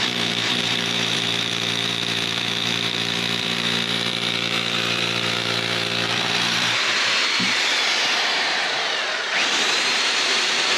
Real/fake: fake